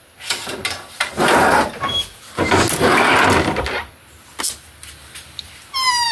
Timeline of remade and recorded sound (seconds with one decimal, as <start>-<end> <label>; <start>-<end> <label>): 0.0-6.1 recorded